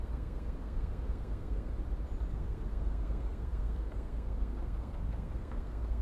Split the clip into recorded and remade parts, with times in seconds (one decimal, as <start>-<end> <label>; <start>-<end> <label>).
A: 0.0-1.7 remade; 1.7-2.3 recorded; 2.3-6.0 remade